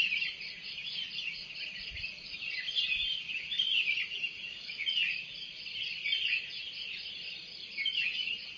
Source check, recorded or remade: recorded